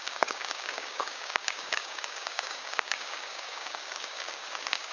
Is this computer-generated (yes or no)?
yes